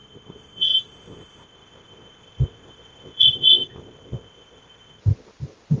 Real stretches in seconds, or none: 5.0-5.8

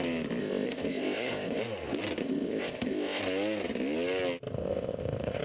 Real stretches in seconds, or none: 0.0-0.4; 1.6-2.2; 3.2-4.5

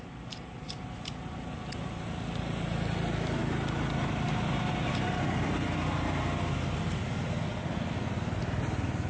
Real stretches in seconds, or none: 0.0-9.1

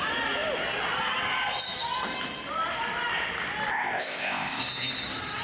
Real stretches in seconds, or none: 0.0-3.7; 4.6-5.4

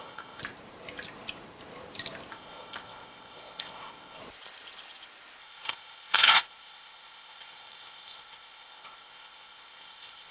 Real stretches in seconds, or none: 0.4-2.3; 4.2-5.4

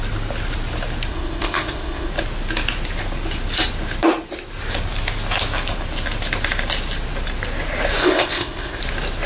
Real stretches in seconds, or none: 0.0-1.1; 2.1-8.0; 8.8-9.3

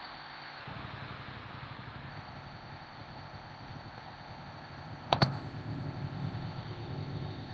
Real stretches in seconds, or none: 0.6-2.1

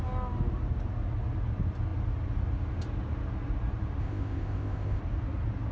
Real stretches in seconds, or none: 0.0-4.0; 5.0-5.7